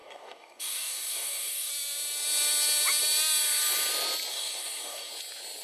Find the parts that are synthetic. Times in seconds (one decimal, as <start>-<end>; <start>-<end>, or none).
0.0-1.7; 4.3-5.1